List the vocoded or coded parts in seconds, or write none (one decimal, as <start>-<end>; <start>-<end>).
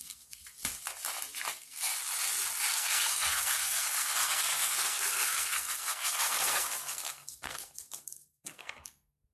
0.0-0.4; 1.5-1.9; 2.7-9.3